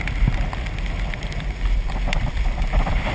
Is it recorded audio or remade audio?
recorded